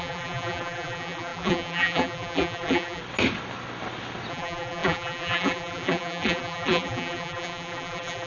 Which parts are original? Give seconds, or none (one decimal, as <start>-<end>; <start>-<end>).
3.0-4.3